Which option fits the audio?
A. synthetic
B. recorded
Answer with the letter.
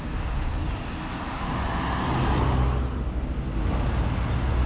B